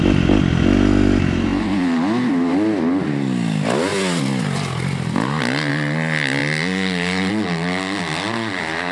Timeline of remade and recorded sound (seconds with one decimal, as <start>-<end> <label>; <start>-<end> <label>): 0.0-8.9 recorded